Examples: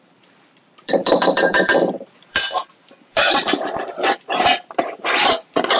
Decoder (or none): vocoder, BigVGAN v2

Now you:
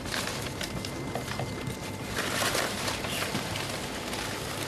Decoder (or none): none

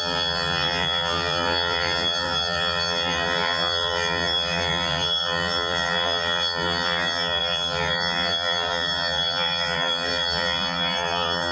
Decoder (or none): vocoder, BigVGAN v2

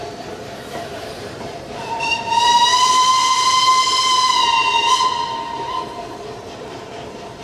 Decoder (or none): vocoder, BigVGAN v2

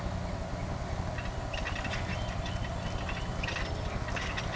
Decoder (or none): none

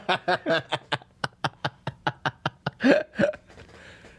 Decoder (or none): vocoder, BigVGAN v2